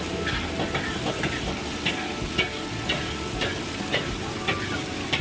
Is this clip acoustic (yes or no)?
yes